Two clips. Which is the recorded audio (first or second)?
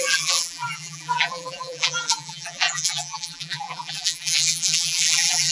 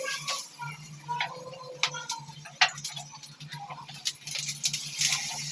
second